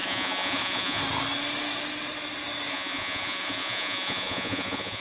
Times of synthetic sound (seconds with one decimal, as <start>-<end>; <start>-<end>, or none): 0.0-1.0; 2.7-5.0